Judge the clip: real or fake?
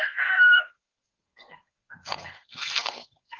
fake